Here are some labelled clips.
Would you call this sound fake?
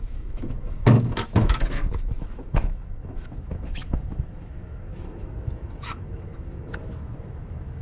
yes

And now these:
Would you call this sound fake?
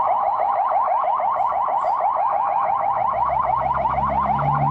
yes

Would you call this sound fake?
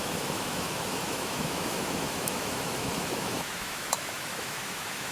yes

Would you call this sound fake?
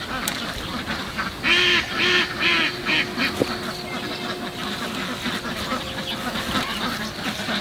no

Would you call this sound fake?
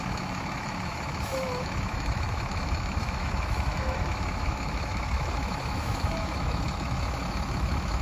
yes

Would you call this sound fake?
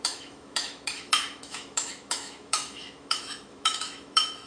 yes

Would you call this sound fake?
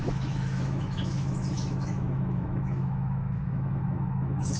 yes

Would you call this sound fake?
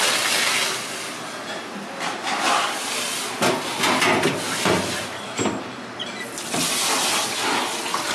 no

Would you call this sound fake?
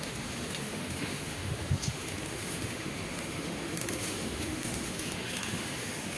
yes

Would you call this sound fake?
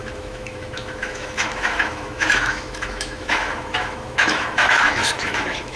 yes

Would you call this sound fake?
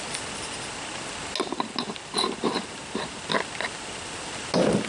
no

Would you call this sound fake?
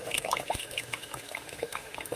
yes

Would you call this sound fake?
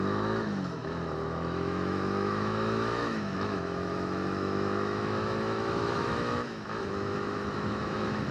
yes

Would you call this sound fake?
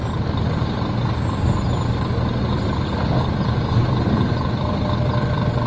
no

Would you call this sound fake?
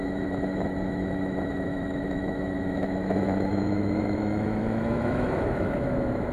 yes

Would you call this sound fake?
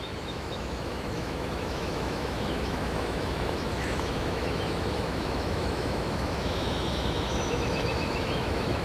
yes